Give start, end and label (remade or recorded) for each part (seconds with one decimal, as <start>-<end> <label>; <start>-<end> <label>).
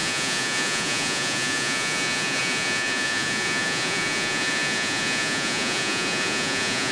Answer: 0.0-6.9 remade